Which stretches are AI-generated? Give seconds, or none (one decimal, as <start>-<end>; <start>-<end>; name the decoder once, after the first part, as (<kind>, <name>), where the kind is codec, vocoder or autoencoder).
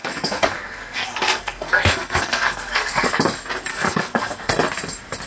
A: 0.0-3.2 (codec, SNAC); 3.7-4.5